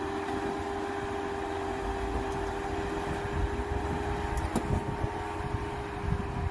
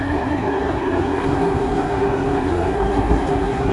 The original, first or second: first